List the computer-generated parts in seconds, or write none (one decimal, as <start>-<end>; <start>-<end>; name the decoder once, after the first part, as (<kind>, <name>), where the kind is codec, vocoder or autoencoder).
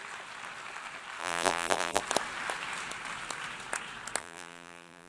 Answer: 1.2-2.0 (vocoder, BigVGAN v2); 4.2-5.1